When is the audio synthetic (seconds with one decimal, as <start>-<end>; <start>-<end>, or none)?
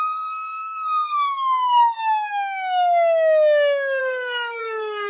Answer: 0.0-2.0; 4.0-5.1